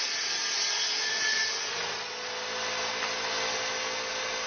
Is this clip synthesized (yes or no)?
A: no